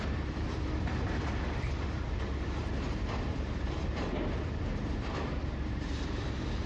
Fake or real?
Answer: fake